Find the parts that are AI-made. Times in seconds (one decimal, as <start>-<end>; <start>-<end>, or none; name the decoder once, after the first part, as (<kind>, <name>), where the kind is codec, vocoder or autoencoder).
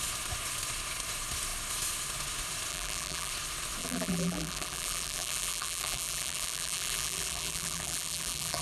2.7-3.3 (vocoder, BigVGAN v2); 3.8-8.6